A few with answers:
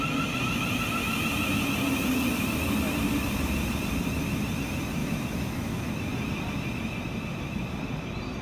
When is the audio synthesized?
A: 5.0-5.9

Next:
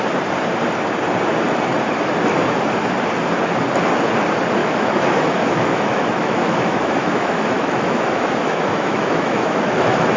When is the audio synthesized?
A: 4.6-10.2

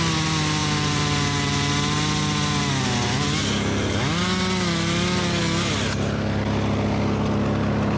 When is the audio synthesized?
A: none